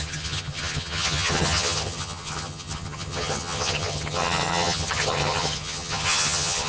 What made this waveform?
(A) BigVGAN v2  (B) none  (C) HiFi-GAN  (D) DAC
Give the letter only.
C